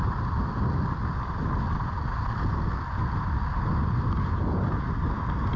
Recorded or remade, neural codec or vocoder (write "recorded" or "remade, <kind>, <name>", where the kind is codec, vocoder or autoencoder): recorded